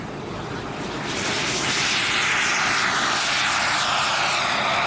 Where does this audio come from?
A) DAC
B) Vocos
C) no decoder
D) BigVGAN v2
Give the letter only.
D